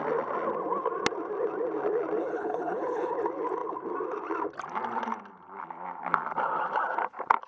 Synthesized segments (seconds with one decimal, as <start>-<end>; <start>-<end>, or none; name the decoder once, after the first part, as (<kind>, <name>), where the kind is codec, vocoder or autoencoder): 2.2-3.1 (codec, HILCodec)